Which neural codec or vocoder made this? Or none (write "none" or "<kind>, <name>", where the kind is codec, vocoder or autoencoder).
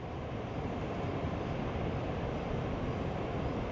none